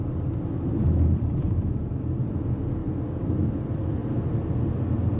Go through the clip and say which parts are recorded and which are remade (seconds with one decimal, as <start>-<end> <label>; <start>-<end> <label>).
0.0-0.8 recorded; 0.8-2.3 remade; 2.3-5.2 recorded